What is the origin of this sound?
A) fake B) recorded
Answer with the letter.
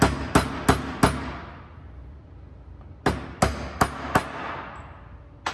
B